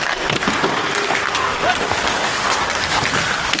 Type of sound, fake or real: real